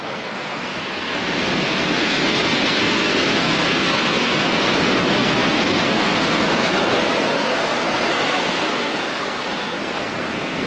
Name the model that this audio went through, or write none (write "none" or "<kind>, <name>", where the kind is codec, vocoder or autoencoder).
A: codec, SNAC